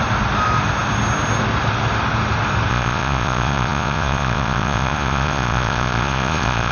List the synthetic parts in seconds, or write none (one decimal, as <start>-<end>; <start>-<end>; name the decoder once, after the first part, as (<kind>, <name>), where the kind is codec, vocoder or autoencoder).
2.7-6.7 (vocoder, Vocos)